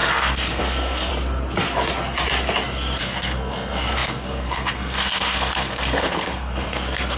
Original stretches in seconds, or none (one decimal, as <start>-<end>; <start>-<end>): 1.1-3.0